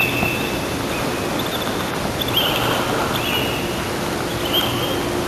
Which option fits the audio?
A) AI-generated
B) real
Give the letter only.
B